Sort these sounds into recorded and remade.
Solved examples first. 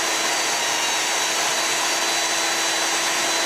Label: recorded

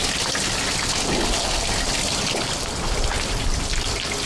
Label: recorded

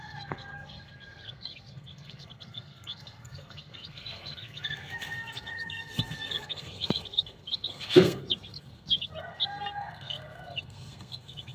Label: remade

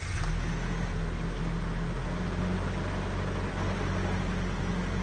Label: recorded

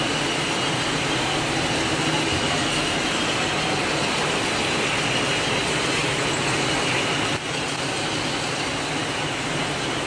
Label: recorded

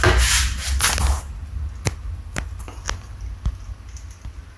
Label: recorded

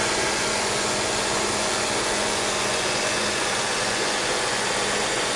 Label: remade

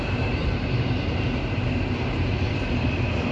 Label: remade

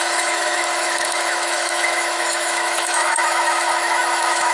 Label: remade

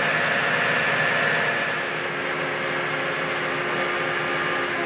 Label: recorded